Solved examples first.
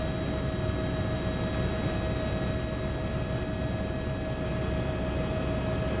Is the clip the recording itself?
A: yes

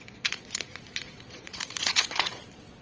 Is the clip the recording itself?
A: no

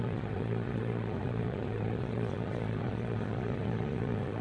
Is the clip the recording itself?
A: no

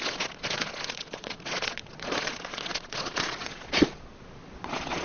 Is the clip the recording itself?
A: no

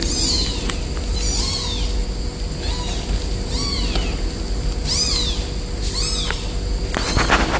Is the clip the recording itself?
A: yes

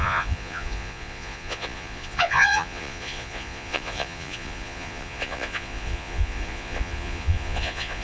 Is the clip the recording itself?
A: no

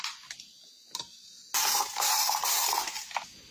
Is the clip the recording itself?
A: yes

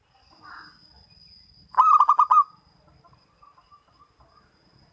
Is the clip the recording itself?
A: yes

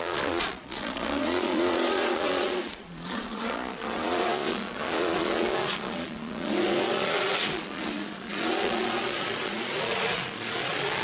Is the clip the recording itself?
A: no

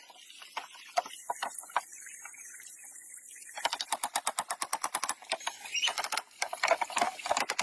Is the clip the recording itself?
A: yes